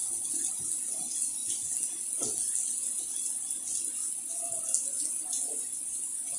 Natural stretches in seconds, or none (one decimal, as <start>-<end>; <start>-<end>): 0.0-6.4